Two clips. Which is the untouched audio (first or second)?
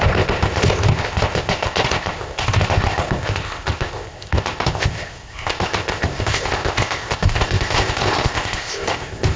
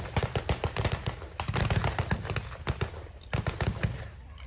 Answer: second